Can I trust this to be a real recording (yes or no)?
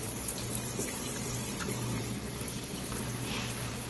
no